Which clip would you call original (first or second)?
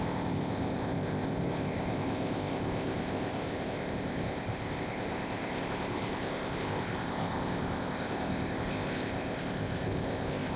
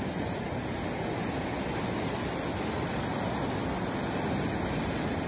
second